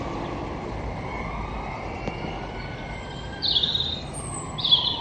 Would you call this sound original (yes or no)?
yes